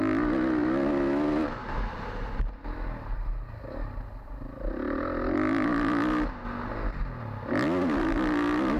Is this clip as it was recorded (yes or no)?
yes